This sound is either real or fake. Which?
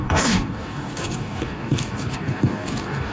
fake